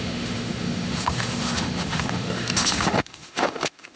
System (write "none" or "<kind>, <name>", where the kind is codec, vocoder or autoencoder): autoencoder, DAC-VAE